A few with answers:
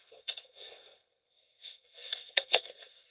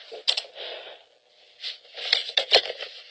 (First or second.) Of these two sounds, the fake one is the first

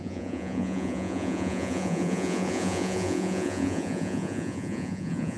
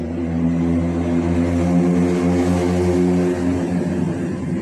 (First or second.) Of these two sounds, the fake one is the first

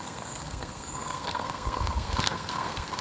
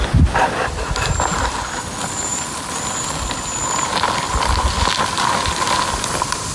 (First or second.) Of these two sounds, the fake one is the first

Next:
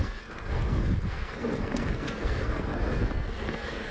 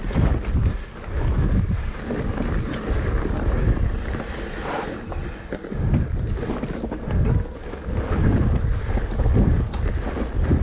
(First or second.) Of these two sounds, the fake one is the first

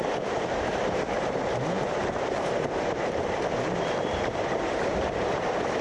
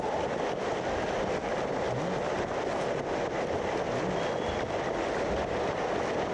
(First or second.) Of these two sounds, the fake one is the first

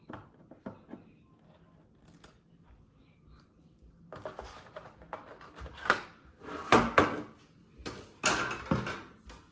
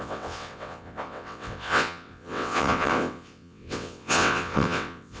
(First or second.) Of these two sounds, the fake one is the second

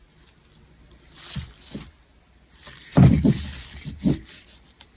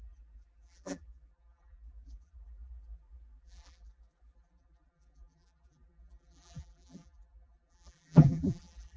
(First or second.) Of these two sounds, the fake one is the second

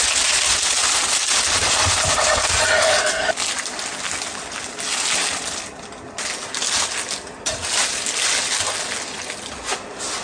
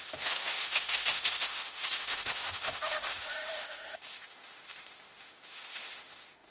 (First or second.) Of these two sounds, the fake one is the second